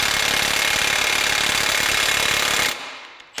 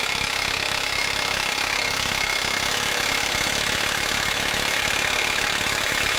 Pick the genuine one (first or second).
first